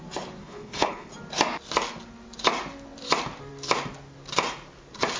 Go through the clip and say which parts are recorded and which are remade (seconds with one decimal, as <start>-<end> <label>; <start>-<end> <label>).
0.0-0.4 recorded; 0.4-1.1 remade; 1.1-5.2 recorded